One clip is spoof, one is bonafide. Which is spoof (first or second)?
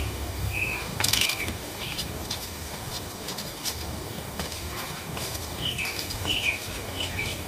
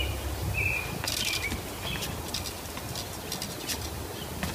first